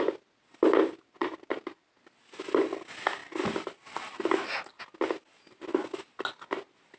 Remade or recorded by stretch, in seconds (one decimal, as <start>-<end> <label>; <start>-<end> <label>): 0.0-1.2 recorded; 1.2-1.8 remade; 1.8-7.0 recorded